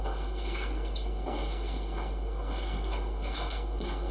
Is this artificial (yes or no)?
yes